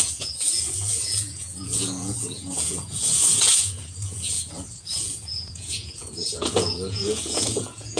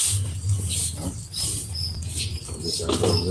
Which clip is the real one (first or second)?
second